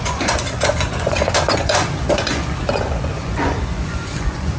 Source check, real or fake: fake